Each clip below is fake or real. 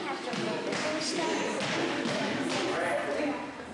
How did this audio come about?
real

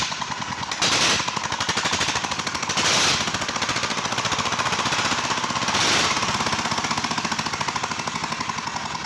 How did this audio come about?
real